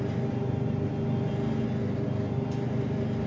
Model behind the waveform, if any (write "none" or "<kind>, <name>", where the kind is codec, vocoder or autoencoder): none